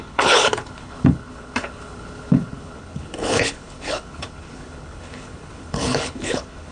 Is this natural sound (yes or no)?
no